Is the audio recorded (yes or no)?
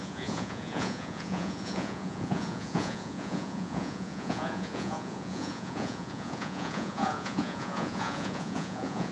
no